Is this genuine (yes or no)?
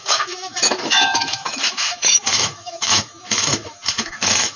no